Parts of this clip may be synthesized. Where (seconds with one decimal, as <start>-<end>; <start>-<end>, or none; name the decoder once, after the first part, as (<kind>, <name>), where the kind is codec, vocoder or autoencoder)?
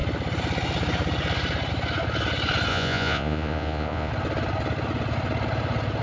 2.7-4.1 (vocoder, Vocos)